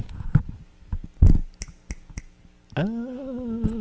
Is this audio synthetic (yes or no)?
no